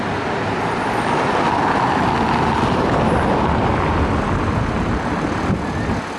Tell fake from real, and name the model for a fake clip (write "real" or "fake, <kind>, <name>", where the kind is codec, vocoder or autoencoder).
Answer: real